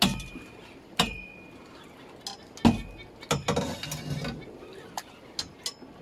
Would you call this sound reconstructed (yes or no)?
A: no